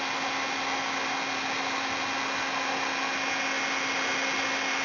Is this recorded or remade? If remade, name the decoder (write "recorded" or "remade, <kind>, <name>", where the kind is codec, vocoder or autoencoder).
recorded